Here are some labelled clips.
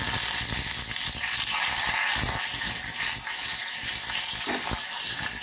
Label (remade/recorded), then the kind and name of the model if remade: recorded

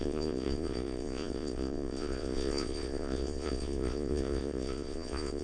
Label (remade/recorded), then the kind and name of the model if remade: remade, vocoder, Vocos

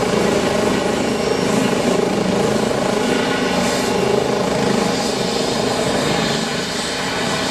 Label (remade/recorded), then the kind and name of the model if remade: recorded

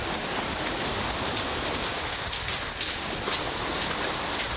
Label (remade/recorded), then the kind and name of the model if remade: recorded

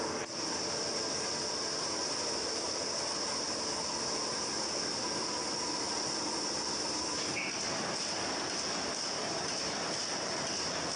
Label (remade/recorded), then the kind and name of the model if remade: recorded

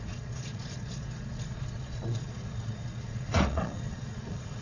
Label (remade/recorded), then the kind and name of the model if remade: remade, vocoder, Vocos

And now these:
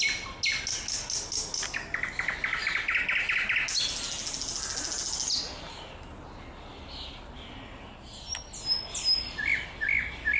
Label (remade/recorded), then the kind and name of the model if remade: recorded